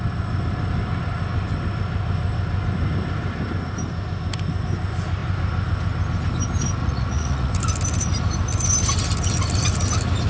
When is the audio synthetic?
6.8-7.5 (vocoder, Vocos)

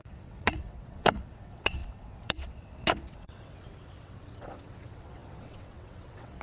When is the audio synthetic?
0.0-6.4 (vocoder, WaveNeXt)

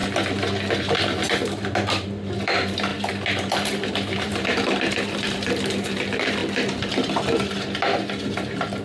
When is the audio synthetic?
0.8-6.4 (vocoder, BigVGAN v2); 8.2-8.8

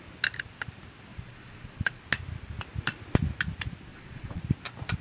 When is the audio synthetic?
1.1-2.0 (vocoder, Vocos); 3.9-4.4

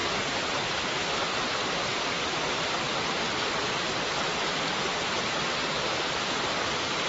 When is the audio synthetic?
0.0-7.1 (vocoder, BigVGAN v2)

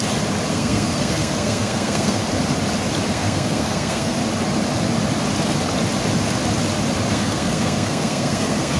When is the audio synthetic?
0.5-2.2 (codec, SNAC); 3.1-4.2; 7.1-8.8